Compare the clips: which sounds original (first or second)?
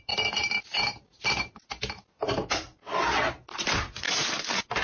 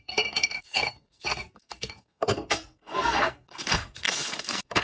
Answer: first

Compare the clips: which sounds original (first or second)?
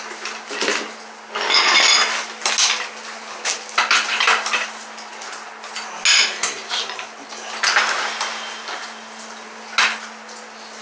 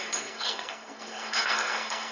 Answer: first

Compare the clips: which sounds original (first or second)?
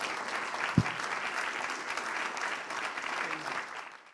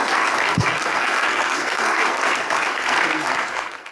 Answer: first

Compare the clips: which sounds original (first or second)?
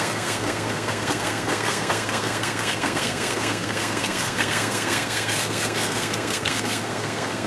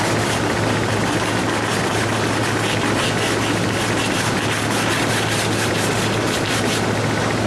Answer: second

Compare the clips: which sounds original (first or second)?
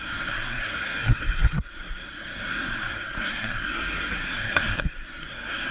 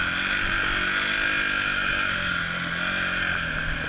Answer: second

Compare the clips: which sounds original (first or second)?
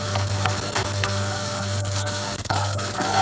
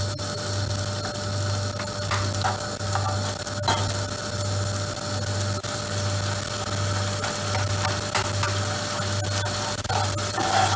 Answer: second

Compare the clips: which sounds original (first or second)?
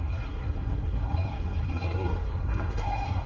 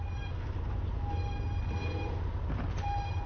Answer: second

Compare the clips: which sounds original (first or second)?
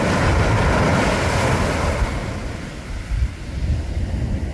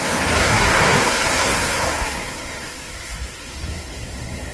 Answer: first